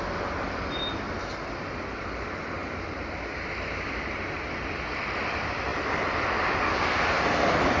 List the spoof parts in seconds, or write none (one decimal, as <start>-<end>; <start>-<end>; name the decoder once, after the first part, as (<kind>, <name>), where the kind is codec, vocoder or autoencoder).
none

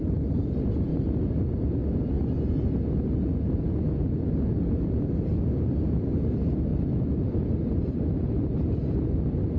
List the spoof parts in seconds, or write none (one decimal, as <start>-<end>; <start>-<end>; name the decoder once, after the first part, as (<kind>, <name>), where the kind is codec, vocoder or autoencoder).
6.7-8.0 (vocoder, BigVGAN v2)

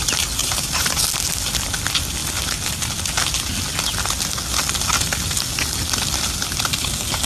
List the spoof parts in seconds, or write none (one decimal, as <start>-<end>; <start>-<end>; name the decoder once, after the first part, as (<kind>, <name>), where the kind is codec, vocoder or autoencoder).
0.4-1.0 (vocoder, BigVGAN v2)

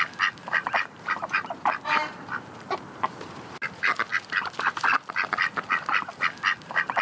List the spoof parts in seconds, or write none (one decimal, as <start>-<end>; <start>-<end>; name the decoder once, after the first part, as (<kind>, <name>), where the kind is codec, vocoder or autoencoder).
0.4-2.2 (vocoder, BigVGAN v2)

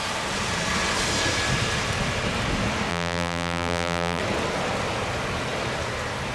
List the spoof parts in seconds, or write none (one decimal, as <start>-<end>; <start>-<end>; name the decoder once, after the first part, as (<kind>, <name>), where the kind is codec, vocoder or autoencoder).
2.9-4.2 (vocoder, BigVGAN v2)